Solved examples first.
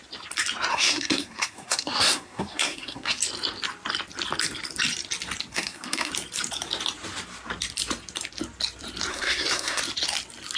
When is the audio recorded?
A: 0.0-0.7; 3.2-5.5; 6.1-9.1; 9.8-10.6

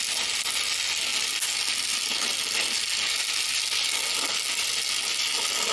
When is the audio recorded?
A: 0.0-5.7

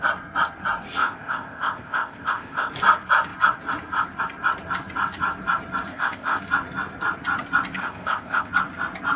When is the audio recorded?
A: 0.0-1.0; 2.7-5.9; 6.4-7.8; 8.5-9.2

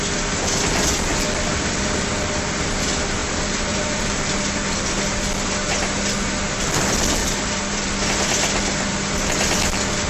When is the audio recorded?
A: 0.0-3.2; 4.4-7.2; 7.9-10.1

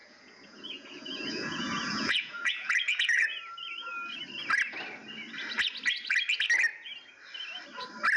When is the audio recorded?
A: 3.4-8.2

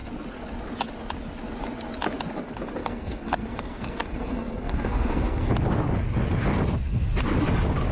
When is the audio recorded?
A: 0.0-2.8; 5.5-7.9

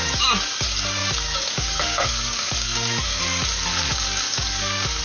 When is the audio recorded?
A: 0.0-1.0; 3.2-3.7

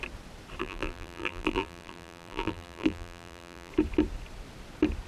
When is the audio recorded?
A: 0.0-0.6; 3.7-5.1